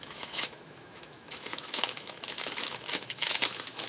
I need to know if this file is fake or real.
fake